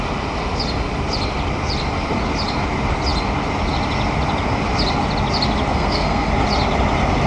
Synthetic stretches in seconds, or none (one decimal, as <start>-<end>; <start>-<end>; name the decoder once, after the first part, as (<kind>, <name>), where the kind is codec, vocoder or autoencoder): 5.7-6.3 (codec, SNAC)